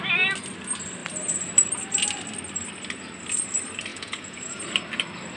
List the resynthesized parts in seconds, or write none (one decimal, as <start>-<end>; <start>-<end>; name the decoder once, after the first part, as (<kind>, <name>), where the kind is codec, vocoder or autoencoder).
3.9-4.6 (vocoder, Vocos)